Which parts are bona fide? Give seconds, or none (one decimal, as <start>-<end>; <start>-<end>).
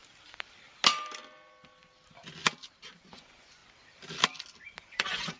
0.0-3.0; 3.6-4.8